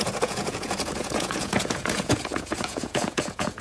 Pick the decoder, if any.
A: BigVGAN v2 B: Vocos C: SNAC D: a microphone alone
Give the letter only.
B